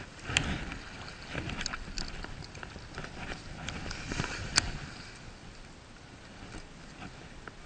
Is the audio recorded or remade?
recorded